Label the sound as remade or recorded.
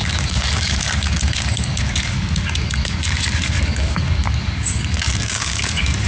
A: remade